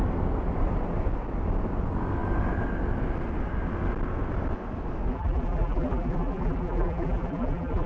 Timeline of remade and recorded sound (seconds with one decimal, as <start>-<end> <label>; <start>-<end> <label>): 0.0-5.1 recorded; 5.1-7.9 remade